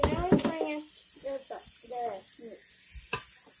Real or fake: real